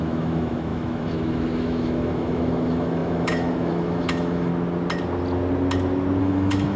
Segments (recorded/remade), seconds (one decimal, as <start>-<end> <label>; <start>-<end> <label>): 0.0-4.5 remade; 4.5-6.2 recorded; 6.2-6.8 remade